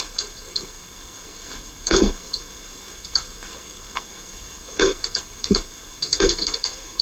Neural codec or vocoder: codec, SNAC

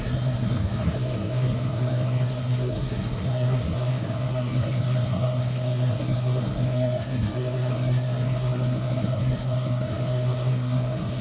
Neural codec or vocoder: codec, SNAC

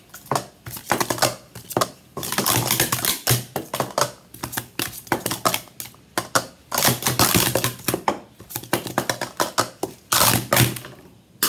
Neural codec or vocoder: none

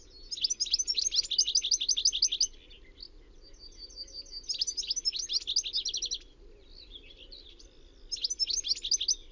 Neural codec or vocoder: none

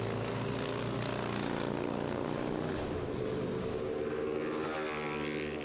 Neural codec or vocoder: none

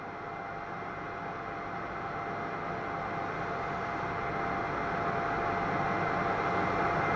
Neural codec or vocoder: none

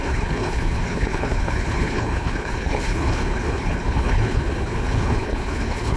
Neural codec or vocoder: codec, HILCodec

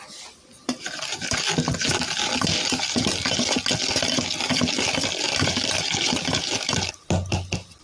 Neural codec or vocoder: none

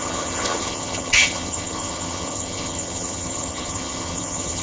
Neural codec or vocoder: vocoder, HiFi-GAN